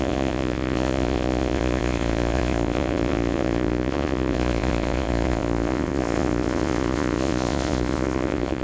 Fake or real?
fake